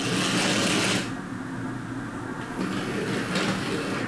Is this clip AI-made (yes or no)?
no